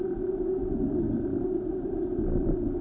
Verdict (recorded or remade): recorded